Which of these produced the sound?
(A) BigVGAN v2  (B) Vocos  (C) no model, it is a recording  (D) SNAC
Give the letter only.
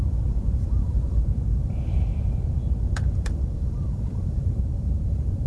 A